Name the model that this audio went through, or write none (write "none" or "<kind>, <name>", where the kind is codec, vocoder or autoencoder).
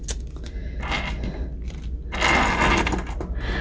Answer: none